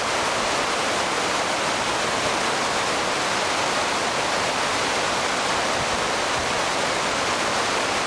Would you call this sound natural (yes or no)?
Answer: yes